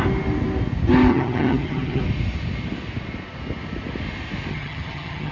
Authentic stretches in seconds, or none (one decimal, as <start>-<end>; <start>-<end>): 0.0-1.1; 2.0-4.5